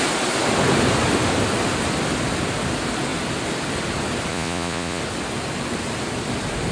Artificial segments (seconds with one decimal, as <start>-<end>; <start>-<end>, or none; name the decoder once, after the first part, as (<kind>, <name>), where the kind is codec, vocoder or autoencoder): 4.3-5.0 (vocoder, Vocos)